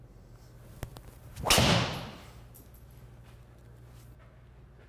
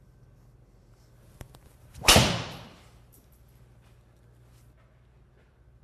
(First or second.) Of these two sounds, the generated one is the second